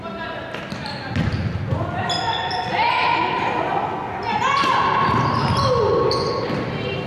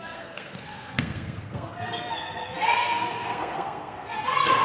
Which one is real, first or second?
first